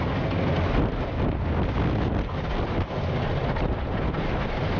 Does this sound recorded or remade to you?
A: recorded